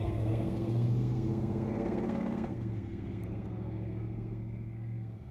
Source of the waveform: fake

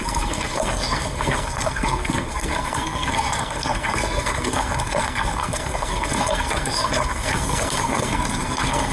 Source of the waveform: fake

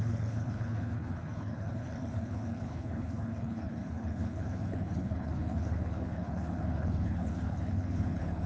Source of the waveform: fake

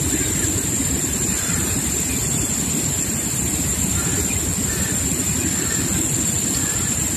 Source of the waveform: real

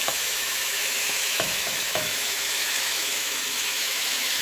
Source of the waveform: fake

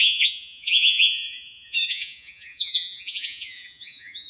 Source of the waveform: fake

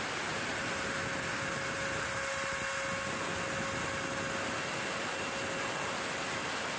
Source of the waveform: real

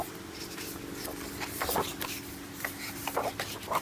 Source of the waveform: real